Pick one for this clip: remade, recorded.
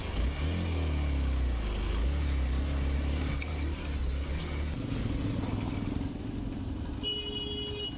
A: recorded